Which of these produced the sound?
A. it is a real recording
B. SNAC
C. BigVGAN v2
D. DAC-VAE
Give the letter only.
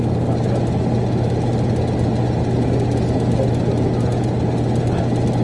A